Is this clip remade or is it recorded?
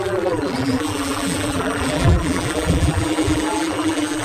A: remade